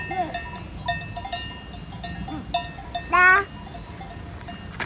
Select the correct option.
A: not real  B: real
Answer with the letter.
B